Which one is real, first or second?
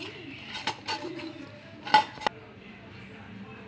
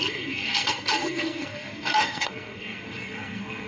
first